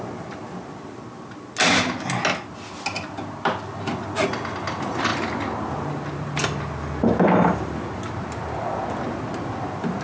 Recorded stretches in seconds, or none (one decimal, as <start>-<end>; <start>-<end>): 0.0-10.0